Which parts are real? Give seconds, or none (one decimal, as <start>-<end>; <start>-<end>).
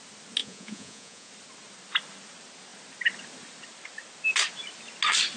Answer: 0.0-0.4; 1.3-5.4